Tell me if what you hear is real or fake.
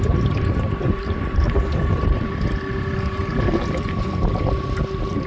real